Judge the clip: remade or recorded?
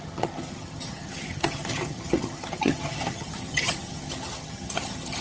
remade